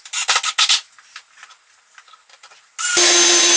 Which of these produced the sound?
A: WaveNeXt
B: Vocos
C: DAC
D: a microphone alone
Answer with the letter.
D